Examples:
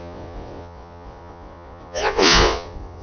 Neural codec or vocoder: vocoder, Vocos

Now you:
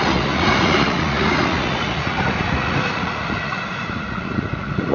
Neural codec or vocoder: vocoder, Vocos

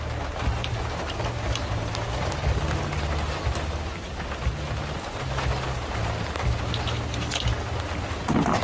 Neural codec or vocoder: none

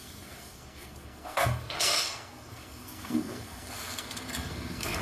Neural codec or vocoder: codec, SNAC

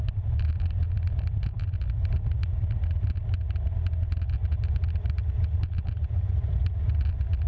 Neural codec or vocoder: none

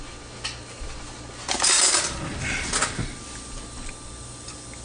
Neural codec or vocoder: none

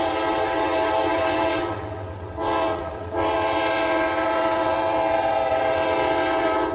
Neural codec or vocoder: vocoder, WaveNeXt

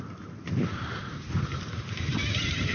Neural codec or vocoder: vocoder, BigVGAN v2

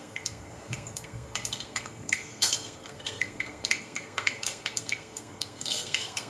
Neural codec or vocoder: codec, SNAC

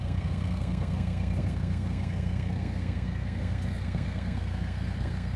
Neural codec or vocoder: codec, SNAC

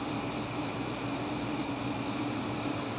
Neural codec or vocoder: vocoder, BigVGAN v2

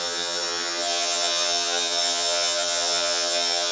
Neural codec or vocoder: vocoder, HiFi-GAN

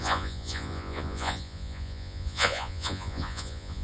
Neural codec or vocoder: vocoder, Vocos